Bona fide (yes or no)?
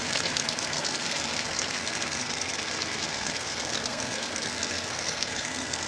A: no